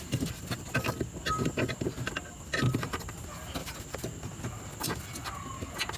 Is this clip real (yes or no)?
yes